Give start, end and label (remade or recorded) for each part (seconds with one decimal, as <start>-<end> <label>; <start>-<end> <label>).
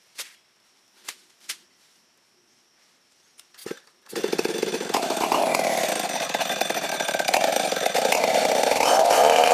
0.0-9.5 recorded